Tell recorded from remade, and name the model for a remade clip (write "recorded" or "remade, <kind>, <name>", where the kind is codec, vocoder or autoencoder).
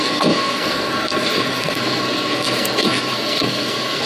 remade, codec, SNAC